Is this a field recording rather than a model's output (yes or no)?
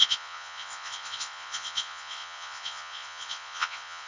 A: no